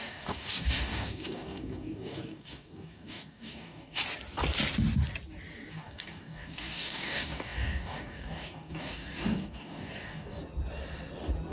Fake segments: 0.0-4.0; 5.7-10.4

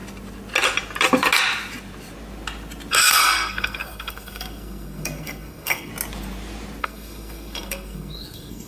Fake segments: 2.9-5.9; 6.8-8.7